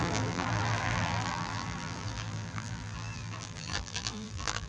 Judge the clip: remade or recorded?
remade